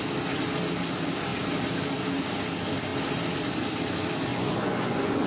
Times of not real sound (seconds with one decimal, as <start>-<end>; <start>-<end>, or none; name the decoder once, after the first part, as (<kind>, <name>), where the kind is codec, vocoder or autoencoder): 4.3-5.3 (vocoder, Vocos)